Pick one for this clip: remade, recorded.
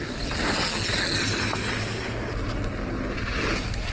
recorded